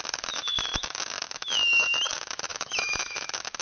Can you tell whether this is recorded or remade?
remade